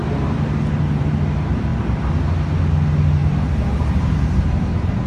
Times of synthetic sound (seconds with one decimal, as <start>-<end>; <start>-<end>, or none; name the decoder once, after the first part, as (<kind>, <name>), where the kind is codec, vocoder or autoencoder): 3.2-5.1 (vocoder, BigVGAN v2)